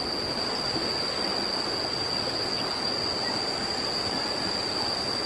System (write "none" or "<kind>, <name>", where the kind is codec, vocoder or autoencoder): none